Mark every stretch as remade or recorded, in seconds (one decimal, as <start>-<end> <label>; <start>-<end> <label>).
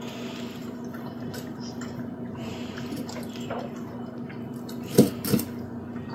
0.0-0.6 recorded; 0.6-4.3 remade; 4.3-6.1 recorded